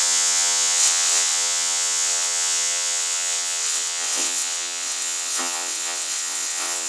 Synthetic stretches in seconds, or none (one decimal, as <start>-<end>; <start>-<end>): 0.0-6.9